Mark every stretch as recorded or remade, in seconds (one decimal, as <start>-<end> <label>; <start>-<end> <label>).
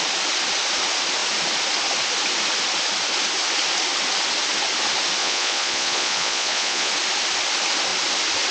0.0-5.2 recorded; 5.2-6.9 remade; 6.9-8.5 recorded